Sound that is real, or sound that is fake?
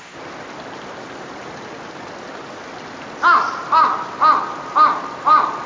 real